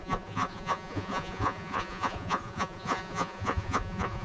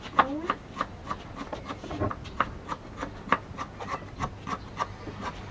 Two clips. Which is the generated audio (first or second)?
first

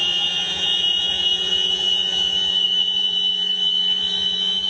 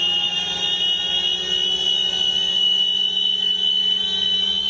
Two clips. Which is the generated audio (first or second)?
first